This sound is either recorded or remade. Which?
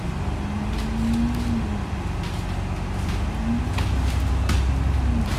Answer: recorded